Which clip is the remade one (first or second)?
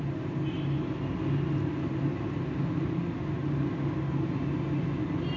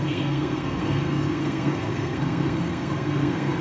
second